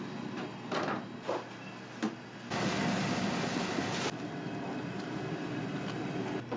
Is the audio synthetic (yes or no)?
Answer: no